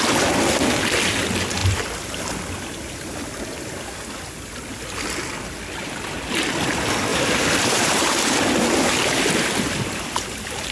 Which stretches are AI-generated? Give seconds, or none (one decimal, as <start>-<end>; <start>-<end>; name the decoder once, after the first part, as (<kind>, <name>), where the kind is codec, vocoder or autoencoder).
7.1-8.4 (vocoder, BigVGAN v2)

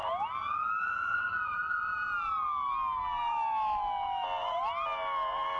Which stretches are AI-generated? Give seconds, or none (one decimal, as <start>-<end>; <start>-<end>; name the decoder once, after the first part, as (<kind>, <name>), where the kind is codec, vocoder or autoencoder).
0.8-1.9 (vocoder, Vocos)

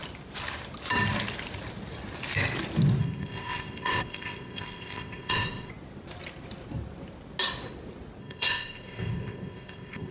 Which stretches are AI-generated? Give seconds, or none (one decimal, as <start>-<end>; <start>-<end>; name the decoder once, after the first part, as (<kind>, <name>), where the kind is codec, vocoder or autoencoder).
3.0-5.7 (codec, ZipCodec); 8.2-10.1

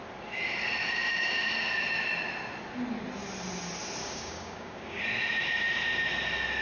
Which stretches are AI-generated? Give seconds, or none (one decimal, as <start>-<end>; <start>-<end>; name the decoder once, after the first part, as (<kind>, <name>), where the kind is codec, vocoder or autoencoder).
4.0-5.0 (codec, DAC)

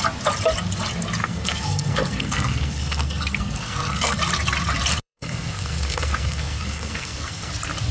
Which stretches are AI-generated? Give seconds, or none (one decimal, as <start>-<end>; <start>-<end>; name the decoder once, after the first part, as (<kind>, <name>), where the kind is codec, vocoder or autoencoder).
1.2-4.2 (codec, SNAC); 5.0-7.5